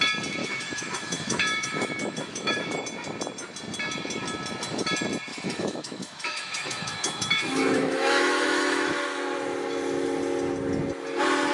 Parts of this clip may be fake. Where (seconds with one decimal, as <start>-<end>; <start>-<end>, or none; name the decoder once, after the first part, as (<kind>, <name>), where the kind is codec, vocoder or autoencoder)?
0.4-2.8 (autoencoder, DAC-VAE); 5.3-8.9